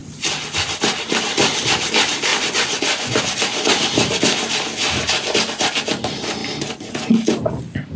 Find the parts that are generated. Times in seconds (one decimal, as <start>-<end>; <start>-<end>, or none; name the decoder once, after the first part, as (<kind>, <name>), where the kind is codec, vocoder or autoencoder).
2.3-3.2 (vocoder, Vocos)